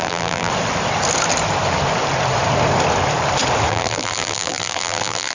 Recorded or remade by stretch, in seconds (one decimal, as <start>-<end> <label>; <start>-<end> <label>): 0.0-0.5 remade; 0.5-3.7 recorded; 3.7-5.3 remade